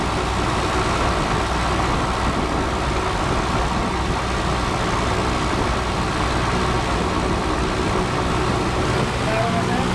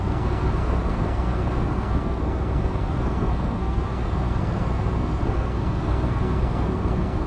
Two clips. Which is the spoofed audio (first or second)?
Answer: second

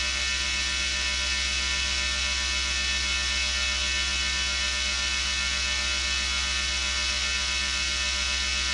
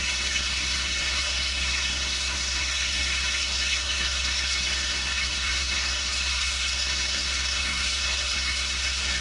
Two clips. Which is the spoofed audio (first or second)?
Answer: second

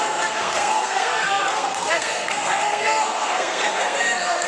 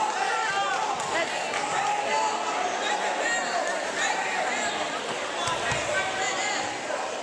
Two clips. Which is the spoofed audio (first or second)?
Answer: first